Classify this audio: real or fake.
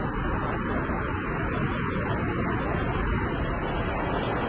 real